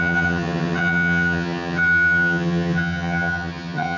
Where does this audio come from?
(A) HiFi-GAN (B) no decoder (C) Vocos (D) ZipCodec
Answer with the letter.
A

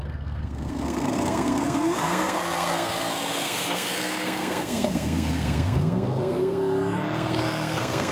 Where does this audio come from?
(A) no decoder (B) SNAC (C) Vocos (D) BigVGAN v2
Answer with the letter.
B